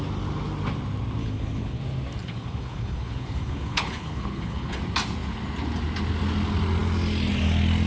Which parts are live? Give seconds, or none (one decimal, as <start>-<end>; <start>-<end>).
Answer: 0.0-1.2; 1.8-2.2; 4.8-7.9